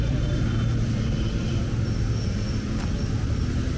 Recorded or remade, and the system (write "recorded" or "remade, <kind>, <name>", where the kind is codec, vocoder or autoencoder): recorded